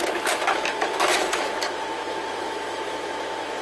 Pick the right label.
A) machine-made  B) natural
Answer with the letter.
A